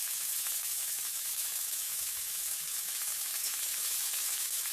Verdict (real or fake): fake